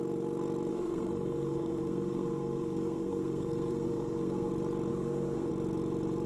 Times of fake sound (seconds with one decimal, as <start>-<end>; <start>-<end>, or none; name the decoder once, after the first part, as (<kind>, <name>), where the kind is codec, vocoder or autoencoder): 0.7-4.5 (codec, SNAC); 4.9-5.5